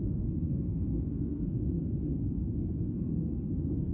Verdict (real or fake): fake